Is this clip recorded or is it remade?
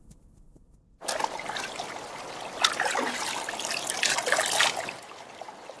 recorded